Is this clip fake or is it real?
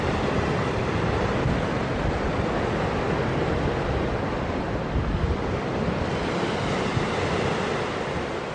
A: real